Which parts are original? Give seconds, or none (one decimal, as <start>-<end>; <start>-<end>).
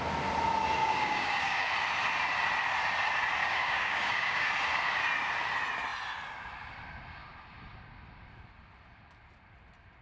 0.0-0.8; 1.7-3.4; 4.5-10.0